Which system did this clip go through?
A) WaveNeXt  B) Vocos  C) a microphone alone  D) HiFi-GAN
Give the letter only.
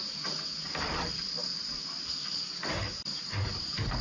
C